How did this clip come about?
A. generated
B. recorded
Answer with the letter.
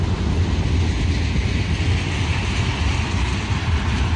B